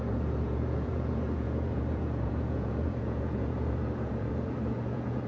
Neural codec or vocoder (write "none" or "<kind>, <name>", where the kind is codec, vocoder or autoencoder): vocoder, Vocos